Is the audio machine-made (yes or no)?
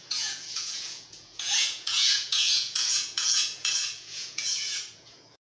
yes